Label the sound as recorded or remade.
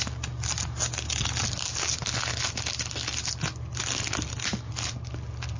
recorded